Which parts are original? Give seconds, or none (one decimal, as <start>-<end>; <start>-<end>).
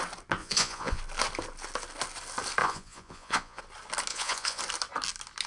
0.0-0.4; 1.0-2.6; 3.6-4.1; 4.6-5.5